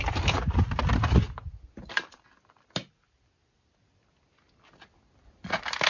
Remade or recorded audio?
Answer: recorded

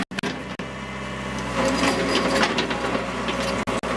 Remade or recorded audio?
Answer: recorded